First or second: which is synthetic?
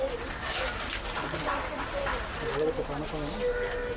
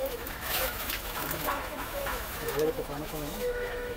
second